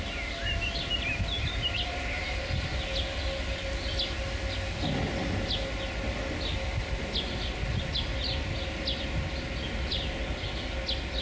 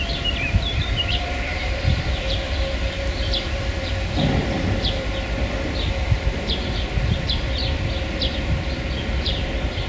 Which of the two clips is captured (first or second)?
first